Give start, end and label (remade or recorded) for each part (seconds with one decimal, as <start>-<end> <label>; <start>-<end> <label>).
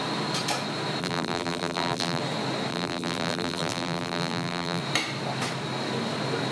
0.0-1.0 recorded; 1.0-2.2 remade; 2.2-2.7 recorded; 2.7-4.8 remade; 4.8-6.5 recorded